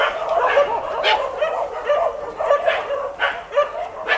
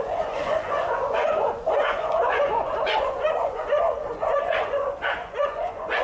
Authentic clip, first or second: first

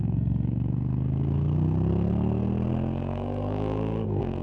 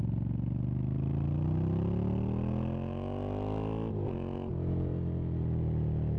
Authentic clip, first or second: second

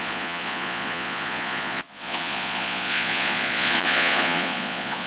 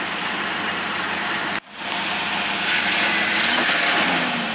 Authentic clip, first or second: second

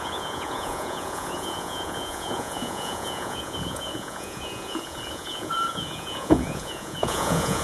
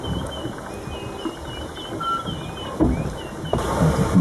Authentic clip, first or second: second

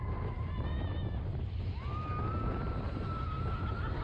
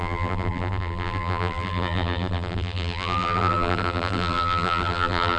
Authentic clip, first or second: first